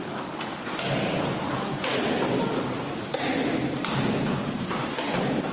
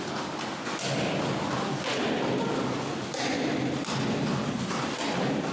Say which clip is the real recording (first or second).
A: second